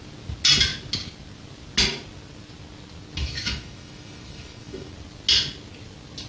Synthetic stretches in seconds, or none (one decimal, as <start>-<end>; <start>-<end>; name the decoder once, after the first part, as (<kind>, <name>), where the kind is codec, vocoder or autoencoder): 3.2-4.9 (autoencoder, DAC-VAE)